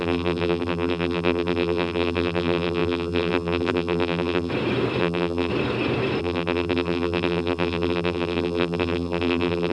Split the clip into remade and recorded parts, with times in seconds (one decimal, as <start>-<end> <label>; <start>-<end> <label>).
0.0-4.5 remade; 4.5-5.0 recorded; 5.0-5.5 remade; 5.5-6.2 recorded; 6.2-9.7 remade